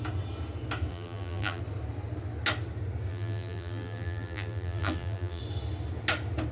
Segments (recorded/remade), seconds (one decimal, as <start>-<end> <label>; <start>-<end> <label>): 0.0-0.9 recorded; 0.9-1.6 remade; 1.6-3.1 recorded; 3.1-5.4 remade; 5.4-6.5 recorded